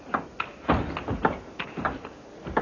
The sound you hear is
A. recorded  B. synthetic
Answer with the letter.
A